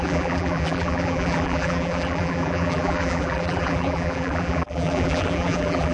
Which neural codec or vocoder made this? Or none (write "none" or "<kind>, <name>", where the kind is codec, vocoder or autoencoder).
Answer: vocoder, BigVGAN v2